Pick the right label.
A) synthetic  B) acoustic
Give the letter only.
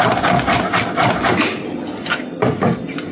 B